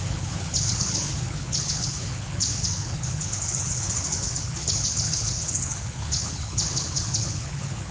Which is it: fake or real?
fake